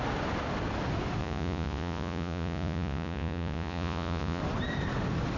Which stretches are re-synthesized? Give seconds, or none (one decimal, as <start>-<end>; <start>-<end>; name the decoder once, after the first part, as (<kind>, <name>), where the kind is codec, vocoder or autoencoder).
1.2-4.4 (vocoder, Vocos)